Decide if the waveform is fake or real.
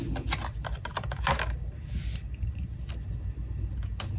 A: real